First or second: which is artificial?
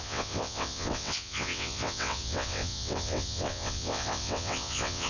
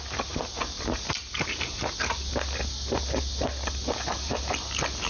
first